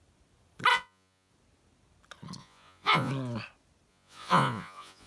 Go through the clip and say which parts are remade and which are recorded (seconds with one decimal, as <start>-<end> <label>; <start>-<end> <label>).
0.0-0.7 recorded; 0.7-1.3 remade; 1.3-2.4 recorded; 2.4-3.1 remade; 3.1-3.9 recorded; 3.9-5.1 remade